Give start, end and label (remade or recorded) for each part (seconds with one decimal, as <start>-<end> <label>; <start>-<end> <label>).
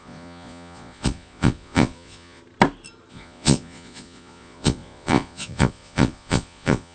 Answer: 0.0-2.4 remade; 2.4-3.1 recorded; 3.1-6.9 remade